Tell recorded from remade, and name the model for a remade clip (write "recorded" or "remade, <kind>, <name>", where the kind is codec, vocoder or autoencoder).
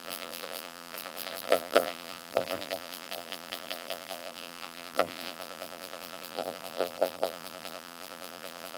remade, vocoder, BigVGAN v2